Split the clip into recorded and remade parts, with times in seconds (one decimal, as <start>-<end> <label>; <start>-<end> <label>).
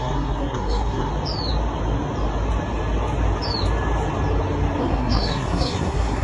0.0-1.1 remade; 1.1-4.8 recorded; 4.8-6.2 remade